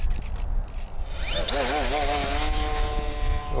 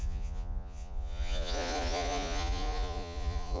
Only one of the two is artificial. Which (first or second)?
second